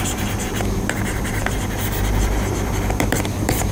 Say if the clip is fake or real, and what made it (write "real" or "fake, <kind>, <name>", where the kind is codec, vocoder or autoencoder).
fake, vocoder, BigVGAN v2